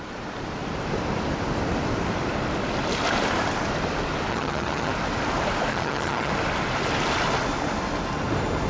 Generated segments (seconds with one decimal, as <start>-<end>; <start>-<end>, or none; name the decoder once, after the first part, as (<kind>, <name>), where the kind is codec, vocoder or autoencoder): 4.3-4.9 (vocoder, HiFi-GAN); 5.7-6.3